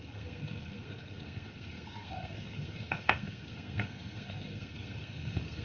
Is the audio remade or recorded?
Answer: remade